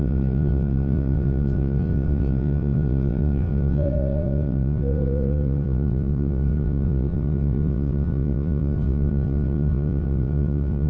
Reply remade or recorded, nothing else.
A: remade